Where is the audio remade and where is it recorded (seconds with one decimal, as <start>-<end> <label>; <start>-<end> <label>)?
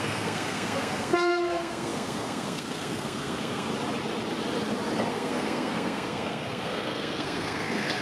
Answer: 0.0-3.7 remade; 3.7-5.1 recorded; 5.1-8.0 remade